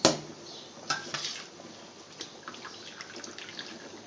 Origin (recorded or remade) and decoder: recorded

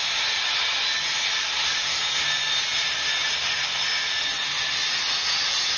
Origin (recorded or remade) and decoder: recorded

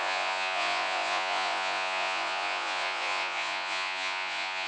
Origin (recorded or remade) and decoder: remade, vocoder, Vocos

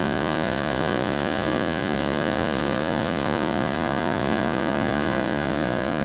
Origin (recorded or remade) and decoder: remade, vocoder, Vocos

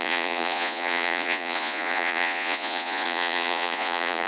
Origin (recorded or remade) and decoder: remade, vocoder, Vocos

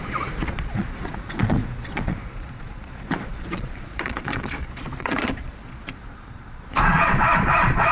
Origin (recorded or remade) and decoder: remade, vocoder, Vocos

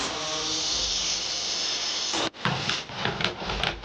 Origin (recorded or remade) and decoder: recorded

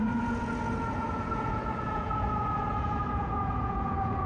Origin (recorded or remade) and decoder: remade, vocoder, Vocos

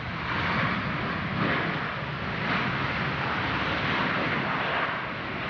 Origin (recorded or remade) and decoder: recorded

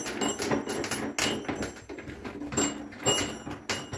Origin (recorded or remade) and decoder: recorded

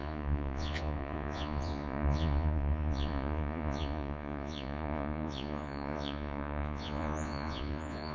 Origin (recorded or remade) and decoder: remade, vocoder, Vocos